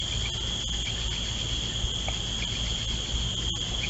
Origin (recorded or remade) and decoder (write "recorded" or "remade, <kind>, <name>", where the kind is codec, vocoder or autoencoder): recorded